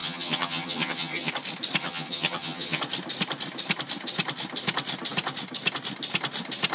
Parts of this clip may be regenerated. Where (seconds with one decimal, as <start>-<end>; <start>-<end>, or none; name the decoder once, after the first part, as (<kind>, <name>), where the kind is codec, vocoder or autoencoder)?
0.0-1.3 (vocoder, HiFi-GAN); 1.8-2.8